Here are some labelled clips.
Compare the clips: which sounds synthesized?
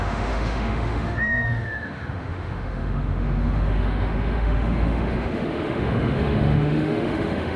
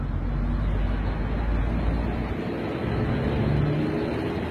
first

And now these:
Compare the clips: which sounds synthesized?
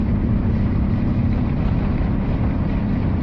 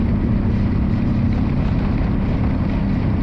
first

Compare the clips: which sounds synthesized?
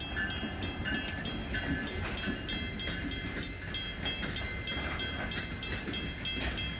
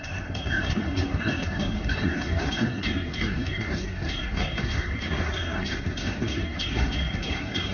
second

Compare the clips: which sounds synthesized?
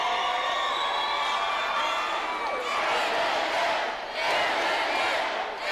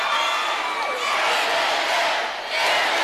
second